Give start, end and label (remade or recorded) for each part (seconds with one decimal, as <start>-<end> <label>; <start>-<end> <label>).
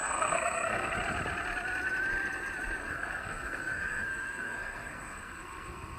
0.0-0.9 remade; 0.9-2.8 recorded; 2.8-6.0 remade